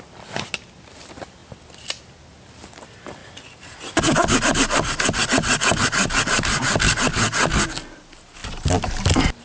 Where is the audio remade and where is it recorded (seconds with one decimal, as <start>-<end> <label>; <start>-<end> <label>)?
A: 0.0-9.4 recorded